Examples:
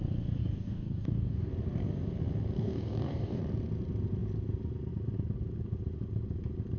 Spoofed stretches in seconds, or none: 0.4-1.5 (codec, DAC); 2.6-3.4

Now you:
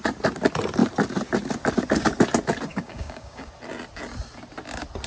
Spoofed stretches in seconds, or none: 2.7-3.5 (codec, DAC)